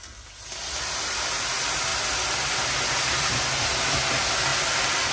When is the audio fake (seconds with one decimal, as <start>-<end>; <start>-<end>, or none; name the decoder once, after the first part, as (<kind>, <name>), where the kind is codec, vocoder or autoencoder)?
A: none